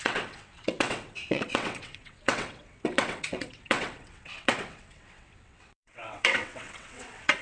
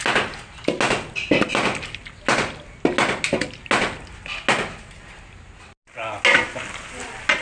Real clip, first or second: second